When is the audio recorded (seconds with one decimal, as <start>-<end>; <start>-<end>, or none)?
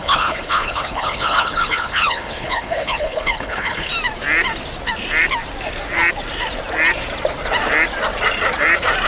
3.9-9.1